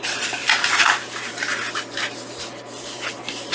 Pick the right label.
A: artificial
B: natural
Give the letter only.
A